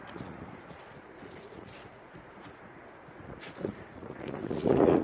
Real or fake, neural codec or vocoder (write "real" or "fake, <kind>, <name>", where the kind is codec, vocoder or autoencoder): fake, vocoder, Vocos